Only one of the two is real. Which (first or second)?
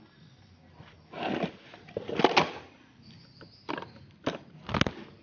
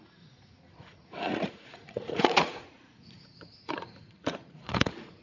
first